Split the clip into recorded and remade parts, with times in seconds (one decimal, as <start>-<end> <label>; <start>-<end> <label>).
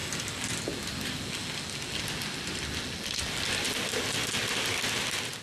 0.0-5.4 recorded